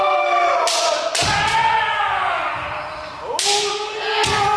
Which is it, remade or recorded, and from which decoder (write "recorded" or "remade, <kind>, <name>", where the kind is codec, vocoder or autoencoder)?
recorded